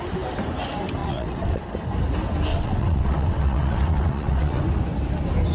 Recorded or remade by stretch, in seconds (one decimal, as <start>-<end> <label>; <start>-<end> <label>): 0.0-1.0 recorded; 1.0-1.6 remade; 1.6-2.5 recorded; 2.5-4.6 remade; 4.6-5.5 recorded